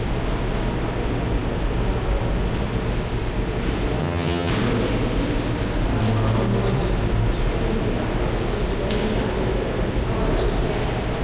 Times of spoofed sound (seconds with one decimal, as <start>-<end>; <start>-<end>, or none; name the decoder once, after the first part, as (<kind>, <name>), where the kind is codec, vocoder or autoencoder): 4.0-4.5 (vocoder, HiFi-GAN)